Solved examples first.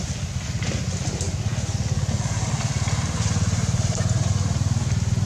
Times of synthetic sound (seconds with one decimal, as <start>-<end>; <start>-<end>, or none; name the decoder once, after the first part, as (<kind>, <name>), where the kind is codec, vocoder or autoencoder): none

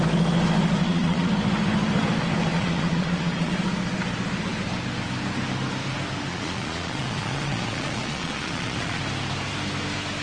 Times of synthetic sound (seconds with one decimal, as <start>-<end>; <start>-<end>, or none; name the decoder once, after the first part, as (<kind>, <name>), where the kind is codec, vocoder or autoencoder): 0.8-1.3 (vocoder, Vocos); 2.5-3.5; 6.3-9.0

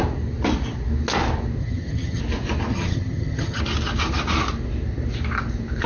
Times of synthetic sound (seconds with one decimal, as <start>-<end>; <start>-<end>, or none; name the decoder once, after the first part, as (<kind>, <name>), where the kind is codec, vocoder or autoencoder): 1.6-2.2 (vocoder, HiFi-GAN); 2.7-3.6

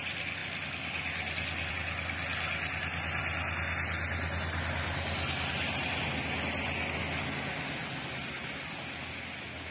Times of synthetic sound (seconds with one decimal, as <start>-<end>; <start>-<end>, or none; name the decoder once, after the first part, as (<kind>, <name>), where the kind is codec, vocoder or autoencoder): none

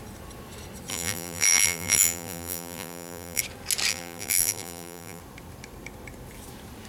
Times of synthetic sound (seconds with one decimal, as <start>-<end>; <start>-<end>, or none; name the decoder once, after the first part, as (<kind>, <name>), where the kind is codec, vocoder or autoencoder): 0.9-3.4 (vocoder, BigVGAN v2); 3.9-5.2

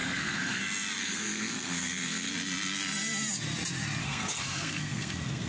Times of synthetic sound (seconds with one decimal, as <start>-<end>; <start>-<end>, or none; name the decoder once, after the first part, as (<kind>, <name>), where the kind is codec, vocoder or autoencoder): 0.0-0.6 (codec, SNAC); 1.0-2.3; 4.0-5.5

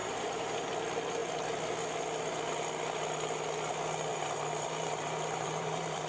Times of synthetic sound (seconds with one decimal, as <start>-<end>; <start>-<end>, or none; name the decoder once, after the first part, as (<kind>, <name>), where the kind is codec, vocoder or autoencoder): 0.0-0.7 (vocoder, BigVGAN v2); 4.1-6.1

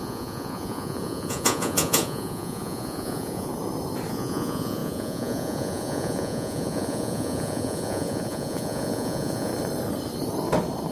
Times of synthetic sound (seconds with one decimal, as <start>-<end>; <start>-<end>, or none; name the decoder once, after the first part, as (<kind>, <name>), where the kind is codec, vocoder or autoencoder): 0.0-3.5 (vocoder, Vocos); 4.1-9.5